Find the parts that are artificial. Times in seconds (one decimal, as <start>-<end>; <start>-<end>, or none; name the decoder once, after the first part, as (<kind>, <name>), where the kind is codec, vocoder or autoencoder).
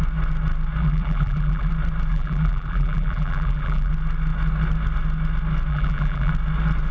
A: 0.8-1.7 (vocoder, BigVGAN v2); 2.1-3.9; 5.7-6.3